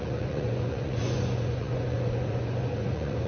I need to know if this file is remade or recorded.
remade